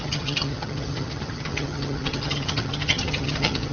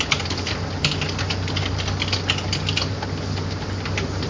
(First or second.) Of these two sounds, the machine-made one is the first